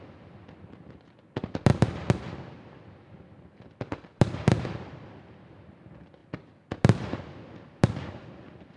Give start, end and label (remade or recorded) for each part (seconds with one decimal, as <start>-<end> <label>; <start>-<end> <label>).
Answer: 0.0-8.8 recorded